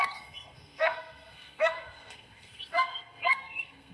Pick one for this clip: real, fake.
fake